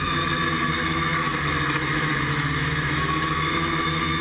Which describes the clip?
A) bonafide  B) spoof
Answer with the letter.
B